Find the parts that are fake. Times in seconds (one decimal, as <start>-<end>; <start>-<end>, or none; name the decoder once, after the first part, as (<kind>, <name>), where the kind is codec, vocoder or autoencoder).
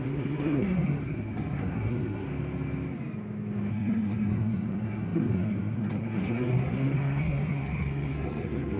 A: 0.0-2.3 (codec, SNAC); 3.7-8.8